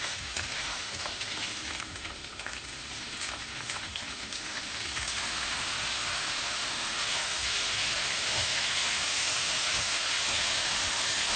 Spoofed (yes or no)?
yes